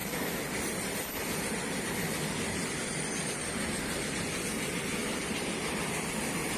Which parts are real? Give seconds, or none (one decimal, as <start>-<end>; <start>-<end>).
1.9-5.0; 6.1-6.6